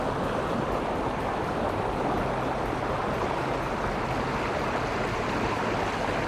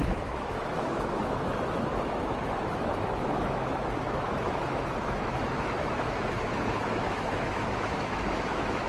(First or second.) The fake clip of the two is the second